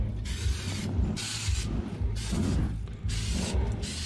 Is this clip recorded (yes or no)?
yes